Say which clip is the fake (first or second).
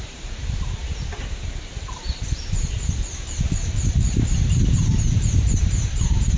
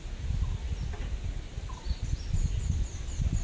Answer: first